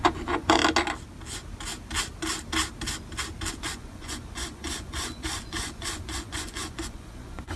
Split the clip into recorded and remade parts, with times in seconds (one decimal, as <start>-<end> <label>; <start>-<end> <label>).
0.0-0.6 remade; 0.6-3.5 recorded; 3.5-7.6 remade